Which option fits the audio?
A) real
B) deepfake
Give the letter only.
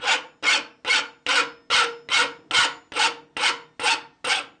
A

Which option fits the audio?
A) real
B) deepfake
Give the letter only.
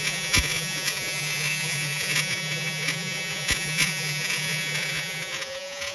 B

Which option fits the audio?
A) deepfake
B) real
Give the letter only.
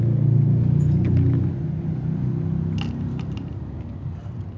B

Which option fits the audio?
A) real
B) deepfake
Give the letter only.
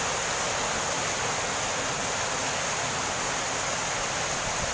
A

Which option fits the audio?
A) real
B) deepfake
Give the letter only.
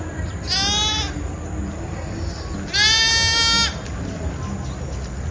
A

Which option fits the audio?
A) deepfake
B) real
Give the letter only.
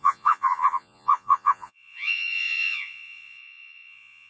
A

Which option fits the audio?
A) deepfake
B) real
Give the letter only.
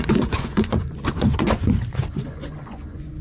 A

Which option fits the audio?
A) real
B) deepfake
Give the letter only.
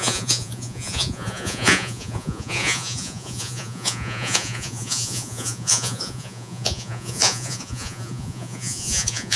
B